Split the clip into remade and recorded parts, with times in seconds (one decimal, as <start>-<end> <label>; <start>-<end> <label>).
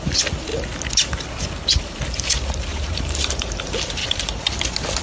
0.0-2.7 recorded; 2.7-3.6 remade; 3.6-4.0 recorded; 4.0-4.5 remade; 4.5-5.0 recorded